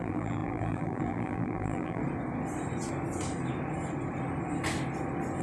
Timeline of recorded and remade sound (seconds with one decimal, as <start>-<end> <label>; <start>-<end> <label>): 0.0-2.0 remade; 2.0-5.4 recorded